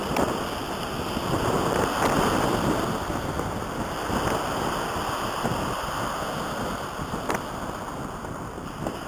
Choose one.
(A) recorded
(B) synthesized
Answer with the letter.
A